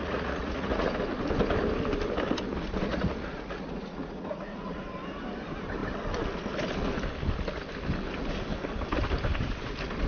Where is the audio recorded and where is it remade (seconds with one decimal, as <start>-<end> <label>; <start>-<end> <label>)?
0.0-0.9 remade; 0.9-2.9 recorded; 2.9-4.8 remade; 4.8-10.1 recorded